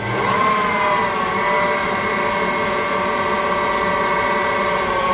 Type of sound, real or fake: real